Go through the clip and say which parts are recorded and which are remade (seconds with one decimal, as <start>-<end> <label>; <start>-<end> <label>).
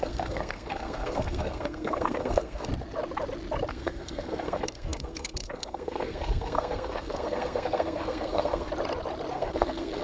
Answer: 0.0-2.7 remade; 2.7-3.7 recorded; 3.7-8.7 remade; 8.7-9.3 recorded; 9.3-10.0 remade